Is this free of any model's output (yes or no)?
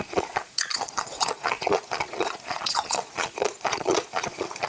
no